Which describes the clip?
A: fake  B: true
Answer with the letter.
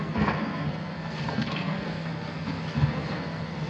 A